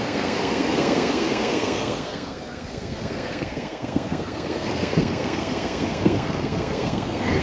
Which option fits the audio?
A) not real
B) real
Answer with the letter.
A